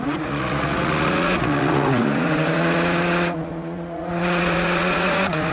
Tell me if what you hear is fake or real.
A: fake